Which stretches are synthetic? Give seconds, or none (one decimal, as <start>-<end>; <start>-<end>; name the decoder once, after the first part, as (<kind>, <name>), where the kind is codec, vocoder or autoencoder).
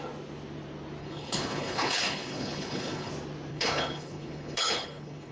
1.0-3.1 (codec, HILCodec); 3.5-5.3